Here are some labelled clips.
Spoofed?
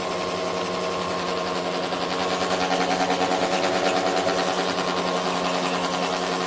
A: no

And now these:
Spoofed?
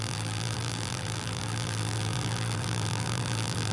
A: yes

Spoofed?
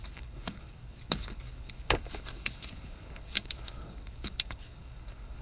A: yes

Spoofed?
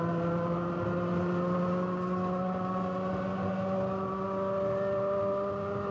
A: no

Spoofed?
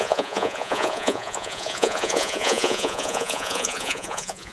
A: yes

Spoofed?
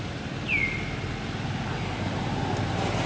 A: no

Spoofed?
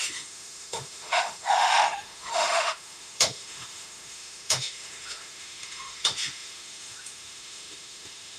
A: yes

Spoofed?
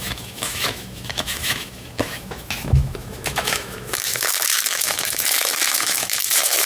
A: yes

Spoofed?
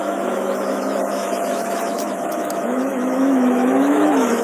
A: yes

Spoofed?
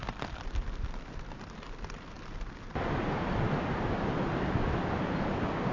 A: no